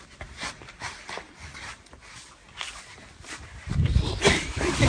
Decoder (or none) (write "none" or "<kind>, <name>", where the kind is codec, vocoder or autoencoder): none